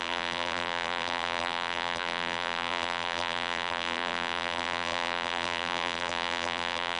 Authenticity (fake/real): fake